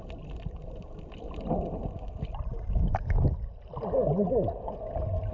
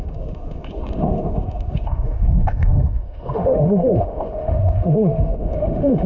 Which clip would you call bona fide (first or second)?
first